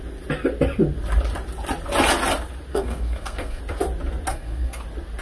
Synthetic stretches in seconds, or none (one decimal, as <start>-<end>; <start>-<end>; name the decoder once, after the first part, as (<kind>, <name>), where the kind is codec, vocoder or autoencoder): 2.7-3.6 (codec, SNAC); 4.3-4.8